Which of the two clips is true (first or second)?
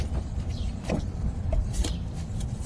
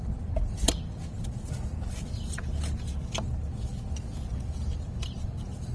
second